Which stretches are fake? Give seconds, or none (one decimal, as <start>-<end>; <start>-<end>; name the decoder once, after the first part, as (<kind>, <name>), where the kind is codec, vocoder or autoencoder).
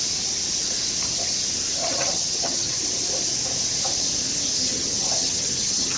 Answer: 1.8-2.8 (vocoder, HiFi-GAN); 4.7-6.0